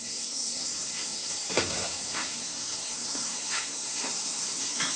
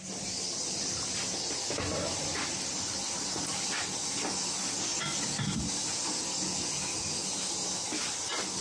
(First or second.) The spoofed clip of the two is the first